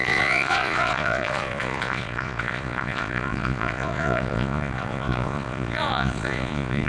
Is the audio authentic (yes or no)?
no